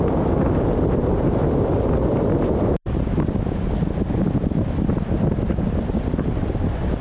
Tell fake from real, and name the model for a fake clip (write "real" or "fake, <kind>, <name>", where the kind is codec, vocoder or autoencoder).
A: real